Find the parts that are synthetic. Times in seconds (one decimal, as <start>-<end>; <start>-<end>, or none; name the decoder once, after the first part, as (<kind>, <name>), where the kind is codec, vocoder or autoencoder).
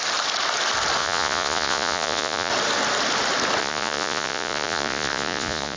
1.0-2.5 (vocoder, Vocos); 3.6-5.8